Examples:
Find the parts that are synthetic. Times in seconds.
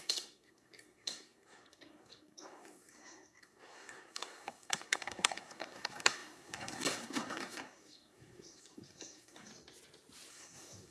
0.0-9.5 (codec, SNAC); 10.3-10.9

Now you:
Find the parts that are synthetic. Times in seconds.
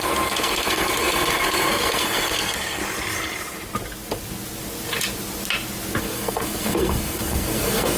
0.0-2.8 (codec, SNAC); 6.0-8.0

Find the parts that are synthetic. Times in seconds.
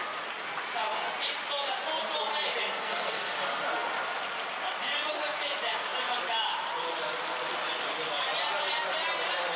2.8-3.3 (codec, SNAC)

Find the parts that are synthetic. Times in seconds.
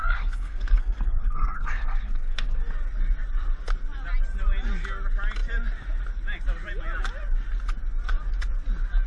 0.0-2.6 (codec, SNAC)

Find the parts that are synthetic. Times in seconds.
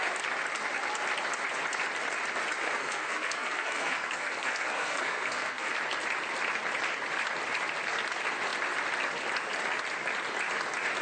2.6-5.7 (codec, SNAC)